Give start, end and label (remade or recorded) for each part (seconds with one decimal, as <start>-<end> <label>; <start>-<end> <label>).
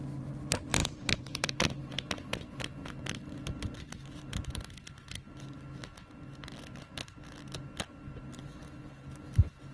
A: 0.0-0.8 recorded; 0.8-1.5 remade; 1.5-9.7 recorded